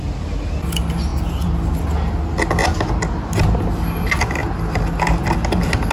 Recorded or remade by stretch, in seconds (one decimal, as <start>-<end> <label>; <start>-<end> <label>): 0.0-5.9 recorded